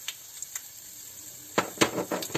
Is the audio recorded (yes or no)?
yes